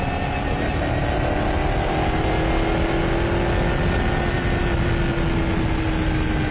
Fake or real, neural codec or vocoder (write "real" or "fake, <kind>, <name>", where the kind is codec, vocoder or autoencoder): real